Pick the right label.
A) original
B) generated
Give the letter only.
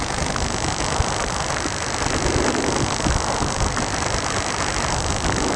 A